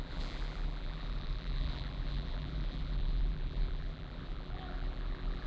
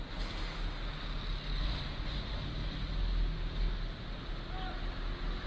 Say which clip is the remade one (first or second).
first